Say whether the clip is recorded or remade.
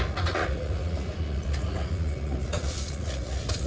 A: remade